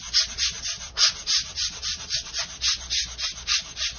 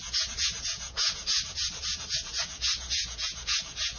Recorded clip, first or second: first